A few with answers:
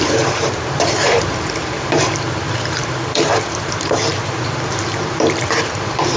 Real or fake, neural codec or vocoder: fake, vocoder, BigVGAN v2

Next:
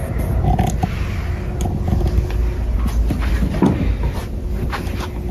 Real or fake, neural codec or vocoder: real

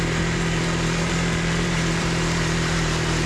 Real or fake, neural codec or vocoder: fake, vocoder, BigVGAN v2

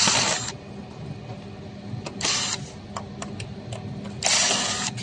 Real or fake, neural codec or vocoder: real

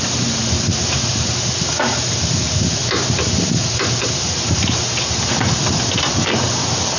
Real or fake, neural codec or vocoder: fake, vocoder, BigVGAN v2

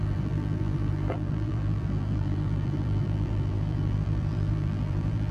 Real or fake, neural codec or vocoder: fake, vocoder, BigVGAN v2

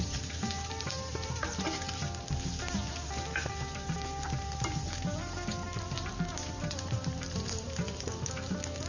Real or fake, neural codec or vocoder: fake, vocoder, BigVGAN v2